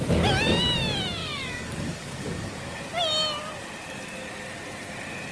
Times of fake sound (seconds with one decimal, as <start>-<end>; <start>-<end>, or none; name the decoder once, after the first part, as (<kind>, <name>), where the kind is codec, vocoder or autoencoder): 1.2-2.8 (codec, DAC)